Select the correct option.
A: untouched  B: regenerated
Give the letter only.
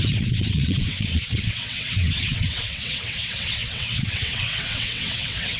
B